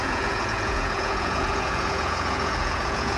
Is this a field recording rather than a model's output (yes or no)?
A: no